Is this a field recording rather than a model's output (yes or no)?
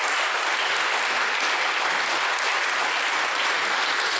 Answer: yes